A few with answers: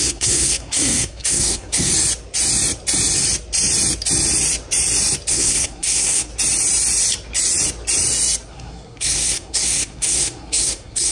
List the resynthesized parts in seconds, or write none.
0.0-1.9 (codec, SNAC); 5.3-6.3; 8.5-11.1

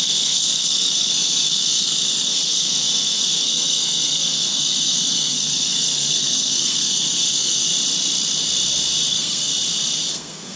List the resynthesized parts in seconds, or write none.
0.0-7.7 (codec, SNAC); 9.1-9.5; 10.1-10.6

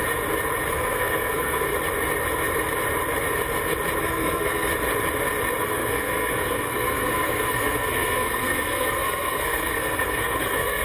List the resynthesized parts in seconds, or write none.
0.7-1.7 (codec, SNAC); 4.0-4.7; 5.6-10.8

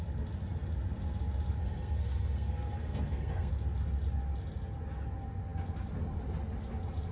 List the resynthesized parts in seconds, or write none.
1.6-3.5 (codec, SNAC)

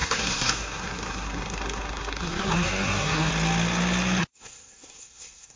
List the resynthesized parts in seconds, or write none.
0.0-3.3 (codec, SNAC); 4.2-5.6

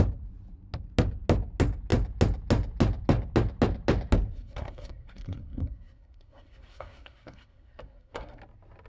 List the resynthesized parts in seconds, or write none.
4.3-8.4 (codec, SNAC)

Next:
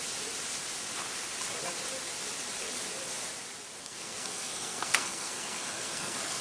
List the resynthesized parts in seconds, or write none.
3.8-6.4 (codec, SNAC)